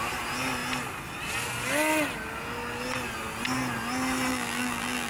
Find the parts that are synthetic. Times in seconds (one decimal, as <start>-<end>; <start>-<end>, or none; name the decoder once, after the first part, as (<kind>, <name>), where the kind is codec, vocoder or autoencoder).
4.3-5.1 (vocoder, BigVGAN v2)